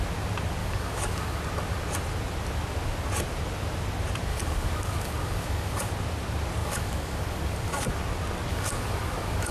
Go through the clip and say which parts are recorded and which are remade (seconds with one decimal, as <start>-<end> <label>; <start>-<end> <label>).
0.0-0.6 recorded; 0.6-1.4 remade; 1.4-4.3 recorded; 4.3-5.9 remade; 5.9-6.6 recorded; 6.6-7.9 remade; 7.9-8.5 recorded; 8.5-9.5 remade